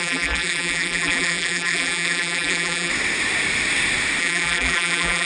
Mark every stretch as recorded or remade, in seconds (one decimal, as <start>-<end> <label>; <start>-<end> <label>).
0.0-2.9 remade; 2.9-4.2 recorded; 4.2-5.2 remade